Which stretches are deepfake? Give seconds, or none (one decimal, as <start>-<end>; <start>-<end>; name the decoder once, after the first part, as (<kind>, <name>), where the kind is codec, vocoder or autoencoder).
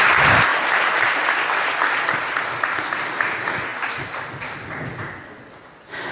none